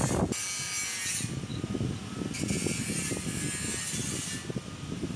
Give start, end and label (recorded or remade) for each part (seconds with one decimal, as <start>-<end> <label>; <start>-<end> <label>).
0.0-5.2 recorded